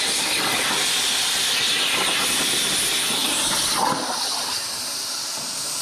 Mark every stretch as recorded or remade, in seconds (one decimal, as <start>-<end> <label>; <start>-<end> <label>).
0.0-3.2 recorded; 3.2-3.9 remade; 3.9-5.8 recorded